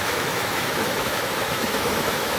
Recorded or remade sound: remade